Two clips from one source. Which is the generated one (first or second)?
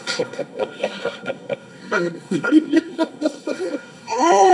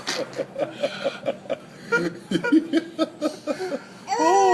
first